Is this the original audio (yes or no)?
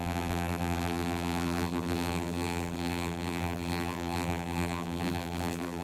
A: no